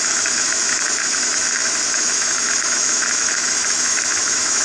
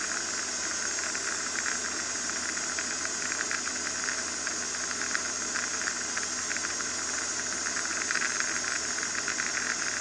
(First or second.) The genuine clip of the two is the second